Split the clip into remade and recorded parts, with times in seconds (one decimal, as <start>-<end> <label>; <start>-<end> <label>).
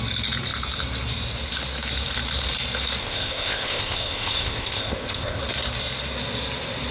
0.0-3.0 recorded; 3.0-5.4 remade; 5.4-6.9 recorded